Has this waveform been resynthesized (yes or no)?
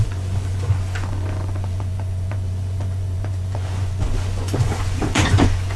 yes